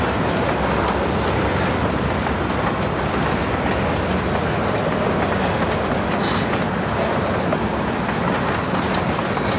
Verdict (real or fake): real